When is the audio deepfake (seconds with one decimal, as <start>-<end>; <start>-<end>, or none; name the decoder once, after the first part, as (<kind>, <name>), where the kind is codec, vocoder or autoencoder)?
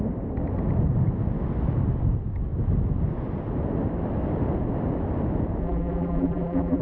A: 5.6-6.8 (vocoder, BigVGAN v2)